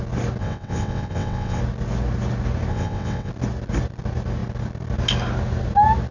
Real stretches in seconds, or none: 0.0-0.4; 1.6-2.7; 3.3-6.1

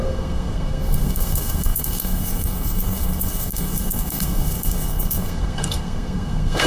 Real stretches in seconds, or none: none